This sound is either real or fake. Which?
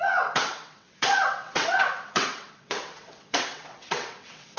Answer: fake